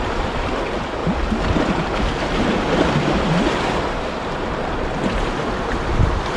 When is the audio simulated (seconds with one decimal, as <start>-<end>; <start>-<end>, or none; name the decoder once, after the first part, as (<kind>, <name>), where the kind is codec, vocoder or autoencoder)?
0.0-1.0 (vocoder, BigVGAN v2); 2.4-6.4